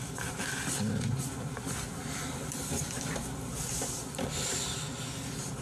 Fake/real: real